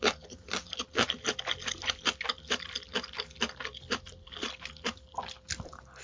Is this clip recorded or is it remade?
recorded